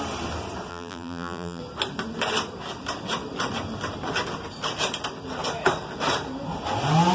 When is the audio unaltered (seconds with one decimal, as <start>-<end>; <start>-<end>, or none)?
0.0-0.7; 1.6-7.1